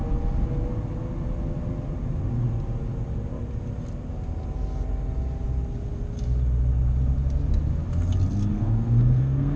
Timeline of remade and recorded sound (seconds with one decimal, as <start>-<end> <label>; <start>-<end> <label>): 0.0-8.5 recorded; 8.5-9.6 remade